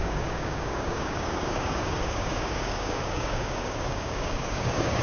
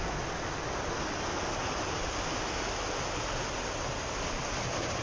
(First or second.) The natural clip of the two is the second